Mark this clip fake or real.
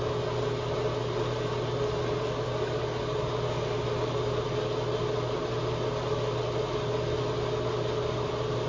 real